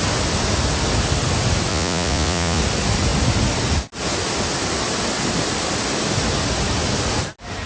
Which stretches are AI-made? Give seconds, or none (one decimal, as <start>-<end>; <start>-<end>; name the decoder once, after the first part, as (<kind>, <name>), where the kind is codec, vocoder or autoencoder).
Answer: 1.7-2.6 (vocoder, Vocos)